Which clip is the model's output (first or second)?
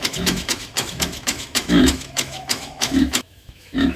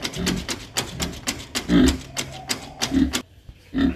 first